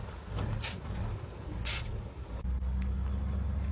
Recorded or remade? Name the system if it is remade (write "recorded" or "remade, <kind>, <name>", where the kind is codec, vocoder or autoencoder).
recorded